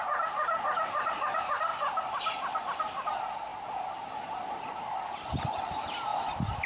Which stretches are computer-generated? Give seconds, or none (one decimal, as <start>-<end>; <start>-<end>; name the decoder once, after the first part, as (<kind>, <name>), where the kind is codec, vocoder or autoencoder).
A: 0.0-1.7 (vocoder, BigVGAN v2); 2.6-3.5; 4.5-6.7